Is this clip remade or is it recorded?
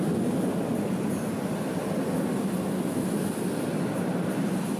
recorded